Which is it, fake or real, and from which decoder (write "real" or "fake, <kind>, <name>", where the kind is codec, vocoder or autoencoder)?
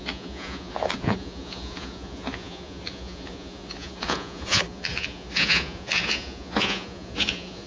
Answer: fake, vocoder, Vocos